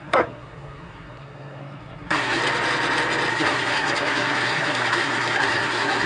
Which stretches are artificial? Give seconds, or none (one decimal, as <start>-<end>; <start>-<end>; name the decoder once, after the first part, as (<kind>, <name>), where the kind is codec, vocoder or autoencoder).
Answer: 0.0-2.4 (codec, SNAC); 3.3-6.1